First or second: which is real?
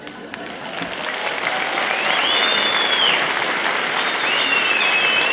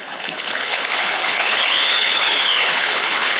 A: first